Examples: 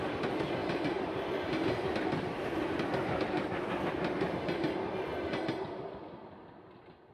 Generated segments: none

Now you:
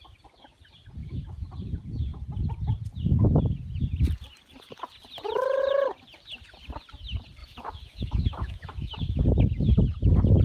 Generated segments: 1.0-1.5; 7.4-9.2

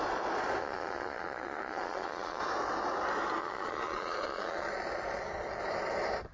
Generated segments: 0.6-2.4; 3.4-4.7

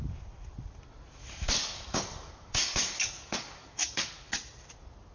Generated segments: 1.2-4.1

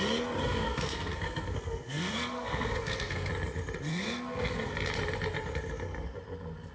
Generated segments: 0.4-3.3; 3.9-4.7